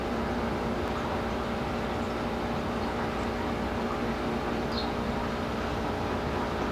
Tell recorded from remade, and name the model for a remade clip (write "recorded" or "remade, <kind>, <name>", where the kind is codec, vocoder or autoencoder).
recorded